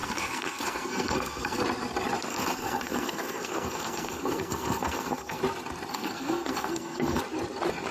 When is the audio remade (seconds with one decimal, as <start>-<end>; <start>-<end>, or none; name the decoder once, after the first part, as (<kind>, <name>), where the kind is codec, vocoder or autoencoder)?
0.0-1.6 (codec, SNAC); 2.3-5.4; 5.9-7.2